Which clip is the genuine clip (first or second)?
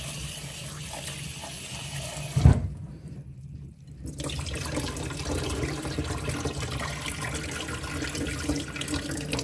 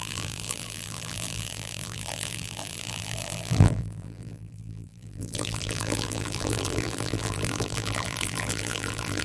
first